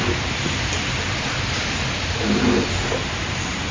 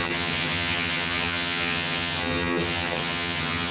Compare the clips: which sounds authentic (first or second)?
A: first